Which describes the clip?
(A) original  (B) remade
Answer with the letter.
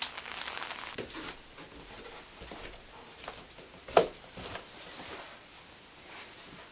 A